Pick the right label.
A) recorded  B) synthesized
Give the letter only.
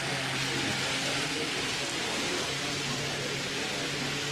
A